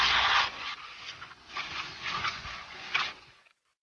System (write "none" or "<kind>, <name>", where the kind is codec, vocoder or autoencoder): vocoder, Vocos